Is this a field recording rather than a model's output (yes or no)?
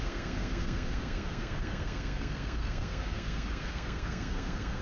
no